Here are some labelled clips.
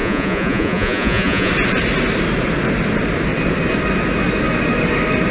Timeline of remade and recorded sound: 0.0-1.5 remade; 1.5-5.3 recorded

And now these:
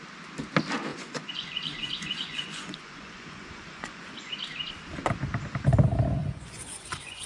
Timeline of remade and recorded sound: 0.0-0.9 recorded; 0.9-4.3 remade; 4.3-6.2 recorded; 6.2-7.3 remade

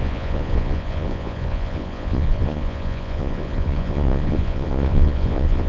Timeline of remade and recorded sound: 0.0-5.7 remade

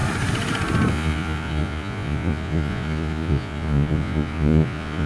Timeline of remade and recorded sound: 0.0-0.9 recorded; 0.9-5.1 remade